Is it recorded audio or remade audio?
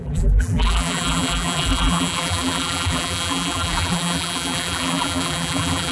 remade